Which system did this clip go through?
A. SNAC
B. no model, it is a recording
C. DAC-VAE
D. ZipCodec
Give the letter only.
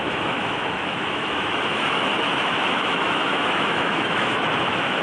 C